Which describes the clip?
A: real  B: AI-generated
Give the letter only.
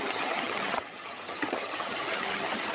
B